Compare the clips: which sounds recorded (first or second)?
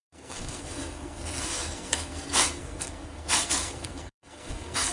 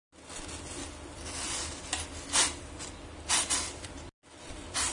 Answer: second